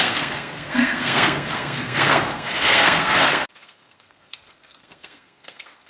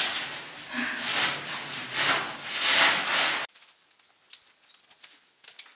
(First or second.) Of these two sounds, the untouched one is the second